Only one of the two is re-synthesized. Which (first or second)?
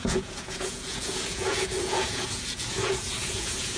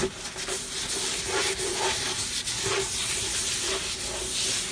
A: first